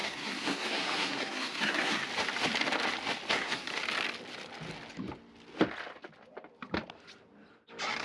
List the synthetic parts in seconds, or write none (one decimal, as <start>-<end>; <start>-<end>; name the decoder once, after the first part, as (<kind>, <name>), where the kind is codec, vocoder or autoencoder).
0.0-2.0 (codec, SNAC); 3.3-3.7